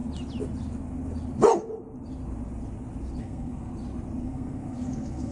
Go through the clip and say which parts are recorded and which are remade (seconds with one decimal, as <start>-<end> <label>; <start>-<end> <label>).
0.0-3.2 recorded; 3.2-3.7 remade; 3.7-4.2 recorded; 4.2-5.3 remade